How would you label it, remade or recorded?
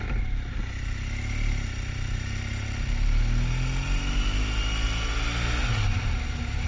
recorded